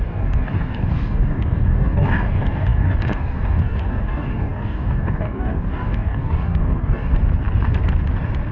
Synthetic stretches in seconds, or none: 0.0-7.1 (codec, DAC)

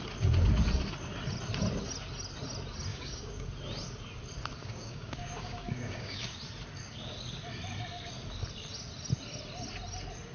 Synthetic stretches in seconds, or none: 2.9-3.5 (codec, DAC); 4.6-6.4

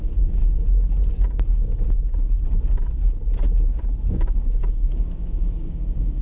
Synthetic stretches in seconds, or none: 0.0-0.4 (codec, DAC); 4.1-6.2

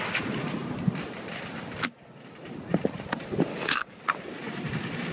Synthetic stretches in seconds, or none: 3.5-4.0 (codec, DAC)

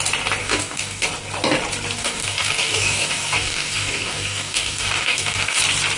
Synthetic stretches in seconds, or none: 0.4-1.1 (codec, DAC); 2.0-5.6